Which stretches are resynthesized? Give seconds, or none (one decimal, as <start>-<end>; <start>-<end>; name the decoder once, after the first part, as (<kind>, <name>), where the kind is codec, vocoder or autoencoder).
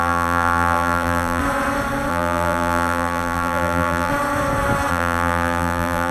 0.0-1.4 (vocoder, BigVGAN v2); 2.1-4.1; 4.9-6.1